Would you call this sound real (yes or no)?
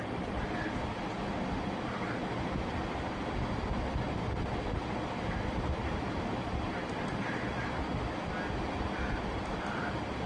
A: yes